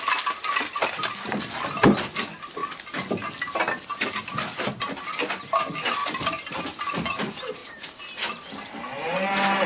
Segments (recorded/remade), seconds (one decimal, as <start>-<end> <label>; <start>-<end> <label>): 0.0-6.0 recorded; 6.0-6.6 remade; 6.6-7.6 recorded; 7.6-9.7 remade